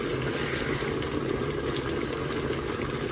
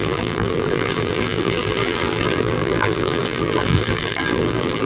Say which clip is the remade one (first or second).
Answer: second